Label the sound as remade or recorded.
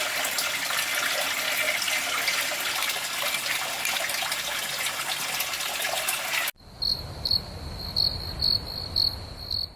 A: recorded